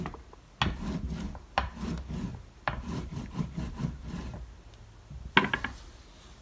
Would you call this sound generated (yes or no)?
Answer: no